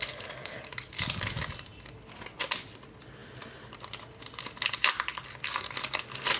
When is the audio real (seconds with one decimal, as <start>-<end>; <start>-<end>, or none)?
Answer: 0.0-0.4; 1.2-6.4